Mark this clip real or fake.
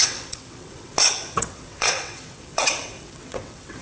fake